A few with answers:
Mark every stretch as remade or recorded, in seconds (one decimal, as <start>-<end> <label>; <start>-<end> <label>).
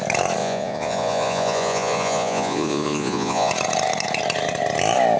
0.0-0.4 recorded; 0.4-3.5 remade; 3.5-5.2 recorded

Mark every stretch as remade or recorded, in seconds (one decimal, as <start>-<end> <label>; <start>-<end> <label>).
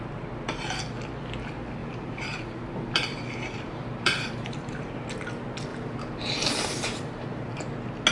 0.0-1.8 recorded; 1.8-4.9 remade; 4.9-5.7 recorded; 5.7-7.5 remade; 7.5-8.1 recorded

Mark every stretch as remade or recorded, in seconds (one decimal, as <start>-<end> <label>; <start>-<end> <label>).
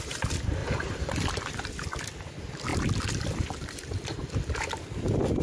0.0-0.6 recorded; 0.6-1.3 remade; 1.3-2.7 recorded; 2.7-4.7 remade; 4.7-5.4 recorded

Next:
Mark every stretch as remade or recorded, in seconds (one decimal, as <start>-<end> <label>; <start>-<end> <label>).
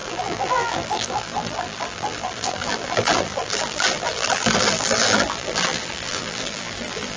0.0-7.2 remade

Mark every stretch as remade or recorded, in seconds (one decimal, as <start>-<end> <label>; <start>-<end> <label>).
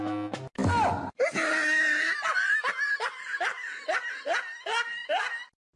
0.0-5.8 recorded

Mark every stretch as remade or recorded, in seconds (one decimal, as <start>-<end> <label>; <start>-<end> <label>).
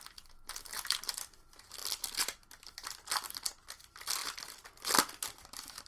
0.0-5.9 recorded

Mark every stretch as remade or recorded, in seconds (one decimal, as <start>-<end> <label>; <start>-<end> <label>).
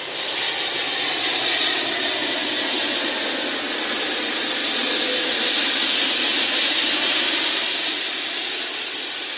0.0-2.4 recorded; 2.4-3.0 remade; 3.0-9.4 recorded